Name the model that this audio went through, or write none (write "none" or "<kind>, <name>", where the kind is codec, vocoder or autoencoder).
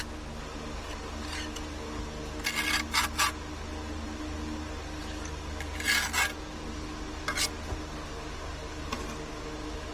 none